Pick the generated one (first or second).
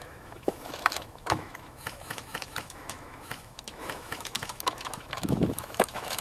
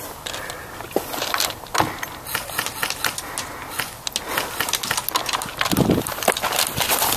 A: first